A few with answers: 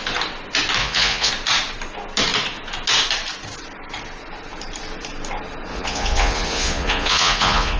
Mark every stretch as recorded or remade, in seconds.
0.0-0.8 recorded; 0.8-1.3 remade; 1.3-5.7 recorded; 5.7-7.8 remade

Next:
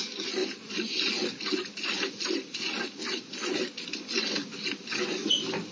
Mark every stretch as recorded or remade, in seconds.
0.0-5.7 recorded

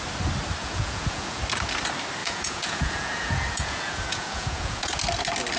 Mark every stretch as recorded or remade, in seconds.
0.0-0.6 recorded; 0.6-1.4 remade; 1.4-2.2 recorded; 2.2-5.0 remade; 5.0-5.6 recorded

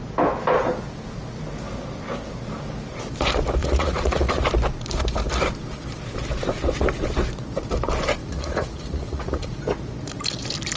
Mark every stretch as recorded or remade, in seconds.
0.0-3.6 recorded; 3.6-4.4 remade; 4.4-8.2 recorded; 8.2-9.6 remade; 9.6-10.8 recorded

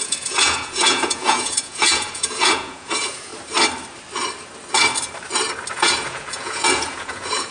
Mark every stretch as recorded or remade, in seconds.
0.0-3.3 remade; 3.3-5.7 recorded; 5.7-7.5 remade

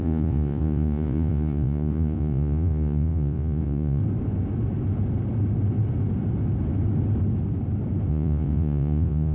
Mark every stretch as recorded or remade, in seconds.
0.0-4.0 remade; 4.0-8.1 recorded; 8.1-9.3 remade

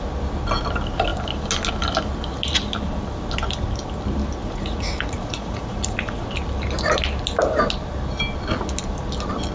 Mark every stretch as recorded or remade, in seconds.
0.0-4.4 recorded; 4.4-6.3 remade; 6.3-9.5 recorded